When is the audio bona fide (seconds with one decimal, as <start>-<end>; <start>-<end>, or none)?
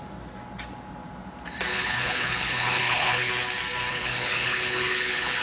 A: 0.0-1.7; 3.3-3.9